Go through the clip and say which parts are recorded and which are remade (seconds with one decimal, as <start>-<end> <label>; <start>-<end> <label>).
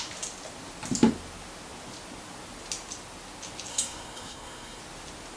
0.0-3.7 recorded; 3.7-4.8 remade; 4.8-5.4 recorded